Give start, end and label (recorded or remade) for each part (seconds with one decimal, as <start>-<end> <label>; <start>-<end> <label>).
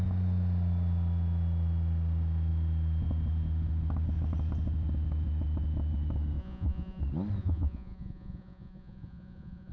0.0-6.4 recorded; 6.4-7.0 remade; 7.0-7.4 recorded; 7.4-9.7 remade